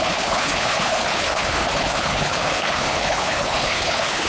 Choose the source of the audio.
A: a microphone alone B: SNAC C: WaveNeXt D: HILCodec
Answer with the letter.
D